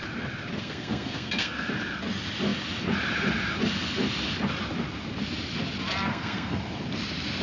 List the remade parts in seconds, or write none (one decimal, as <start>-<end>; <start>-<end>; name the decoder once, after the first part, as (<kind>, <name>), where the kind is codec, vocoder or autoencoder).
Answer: 0.6-1.7 (codec, SNAC); 6.1-6.7